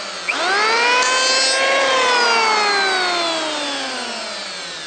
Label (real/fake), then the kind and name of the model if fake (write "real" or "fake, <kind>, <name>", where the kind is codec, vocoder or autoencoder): real